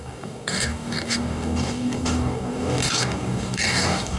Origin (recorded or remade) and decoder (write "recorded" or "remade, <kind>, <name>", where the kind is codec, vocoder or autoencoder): remade, codec, DAC